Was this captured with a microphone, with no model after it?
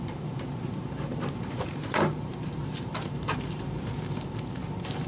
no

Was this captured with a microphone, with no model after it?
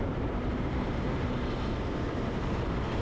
no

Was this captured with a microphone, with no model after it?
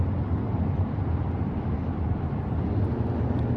yes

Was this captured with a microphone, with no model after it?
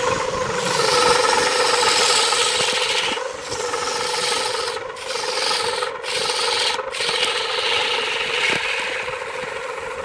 yes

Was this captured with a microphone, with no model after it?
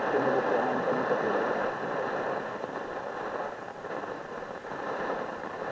no